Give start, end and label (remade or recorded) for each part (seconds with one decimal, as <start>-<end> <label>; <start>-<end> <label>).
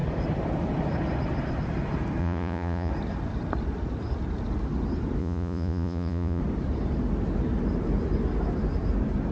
0.0-2.2 recorded; 2.2-2.9 remade; 2.9-5.2 recorded; 5.2-6.4 remade; 6.4-9.3 recorded